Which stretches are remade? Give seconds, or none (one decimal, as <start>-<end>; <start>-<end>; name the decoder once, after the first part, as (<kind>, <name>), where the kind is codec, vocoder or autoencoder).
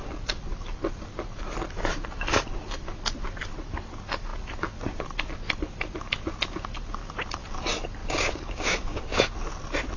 8.0-9.0 (codec, DAC)